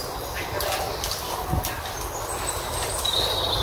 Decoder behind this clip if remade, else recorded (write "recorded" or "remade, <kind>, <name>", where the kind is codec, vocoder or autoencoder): recorded